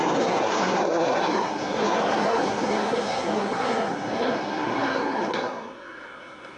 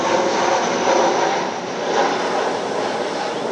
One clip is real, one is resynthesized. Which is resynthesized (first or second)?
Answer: first